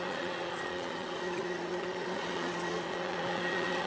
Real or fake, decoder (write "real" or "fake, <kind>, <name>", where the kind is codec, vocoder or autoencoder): fake, vocoder, Vocos